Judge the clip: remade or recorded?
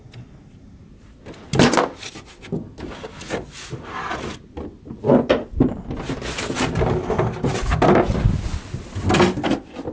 recorded